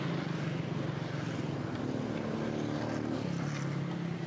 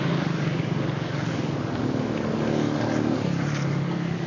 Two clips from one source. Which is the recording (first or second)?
first